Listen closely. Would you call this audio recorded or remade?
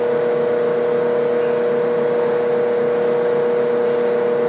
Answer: recorded